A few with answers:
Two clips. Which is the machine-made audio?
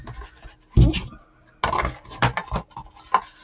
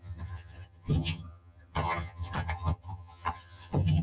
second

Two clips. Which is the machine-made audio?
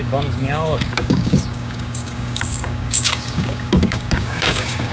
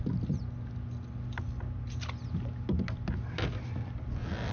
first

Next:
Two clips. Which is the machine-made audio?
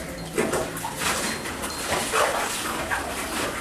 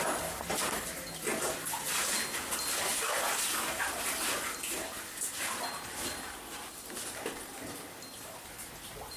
first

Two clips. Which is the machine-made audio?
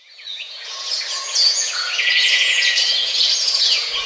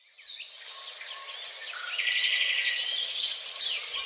first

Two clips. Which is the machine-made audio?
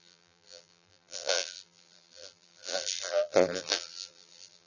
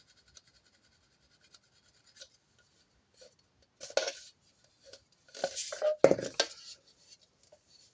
first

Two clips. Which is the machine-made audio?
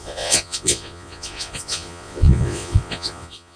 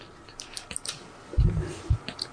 first